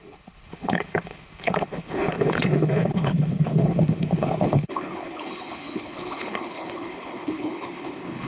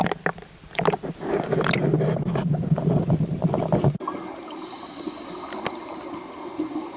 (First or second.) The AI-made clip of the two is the first